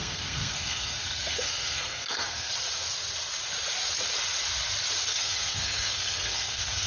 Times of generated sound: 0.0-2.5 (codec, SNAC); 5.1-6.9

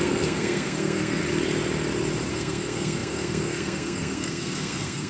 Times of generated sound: 0.0-1.2 (codec, SNAC); 2.3-5.1

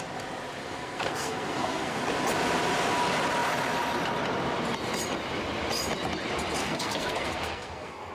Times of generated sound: 0.6-2.0 (codec, SNAC); 6.6-8.1

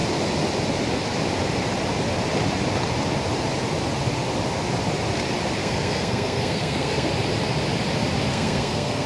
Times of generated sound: 5.6-7.1 (codec, SNAC); 8.3-9.1